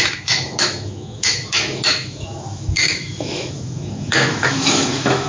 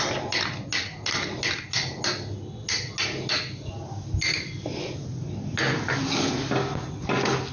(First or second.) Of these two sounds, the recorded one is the second